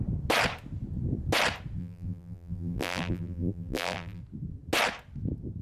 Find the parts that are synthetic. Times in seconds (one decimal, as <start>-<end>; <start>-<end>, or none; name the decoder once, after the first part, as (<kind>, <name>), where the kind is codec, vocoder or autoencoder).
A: 1.8-4.2 (vocoder, BigVGAN v2)